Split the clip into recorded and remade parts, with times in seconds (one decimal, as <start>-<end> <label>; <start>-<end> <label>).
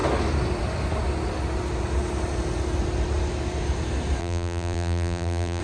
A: 0.0-4.2 recorded; 4.2-5.6 remade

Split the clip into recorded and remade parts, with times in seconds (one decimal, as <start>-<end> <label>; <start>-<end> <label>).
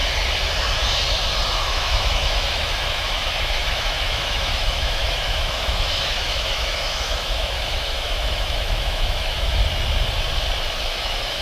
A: 0.0-1.6 recorded; 1.6-9.6 remade; 9.6-10.8 recorded; 10.8-11.4 remade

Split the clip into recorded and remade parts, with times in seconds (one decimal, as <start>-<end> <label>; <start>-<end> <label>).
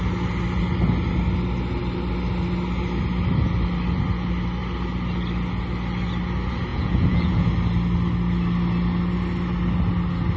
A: 0.0-6.7 recorded; 6.7-7.5 remade; 7.5-10.4 recorded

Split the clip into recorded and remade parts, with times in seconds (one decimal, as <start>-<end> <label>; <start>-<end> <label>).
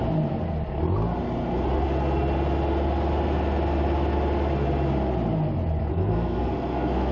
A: 0.0-5.9 recorded; 5.9-7.1 remade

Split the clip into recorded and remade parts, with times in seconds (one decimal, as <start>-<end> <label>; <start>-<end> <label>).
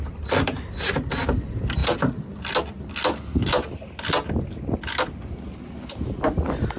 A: 0.0-6.8 recorded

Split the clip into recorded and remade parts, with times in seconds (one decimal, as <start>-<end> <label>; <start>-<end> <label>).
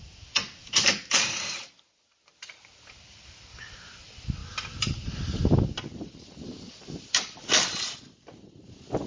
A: 0.0-9.1 recorded